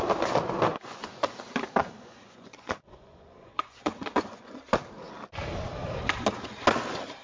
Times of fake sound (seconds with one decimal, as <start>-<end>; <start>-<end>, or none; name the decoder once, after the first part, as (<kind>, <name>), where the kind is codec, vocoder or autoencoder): 0.7-1.4 (vocoder, Vocos); 1.8-4.6